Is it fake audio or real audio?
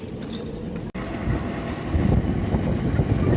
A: real